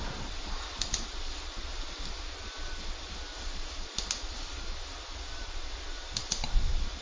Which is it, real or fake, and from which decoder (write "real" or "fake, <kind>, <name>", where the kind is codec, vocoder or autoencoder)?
real